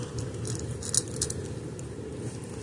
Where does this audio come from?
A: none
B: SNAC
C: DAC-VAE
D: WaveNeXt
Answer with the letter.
A